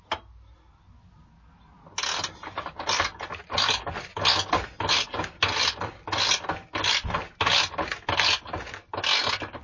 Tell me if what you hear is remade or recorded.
recorded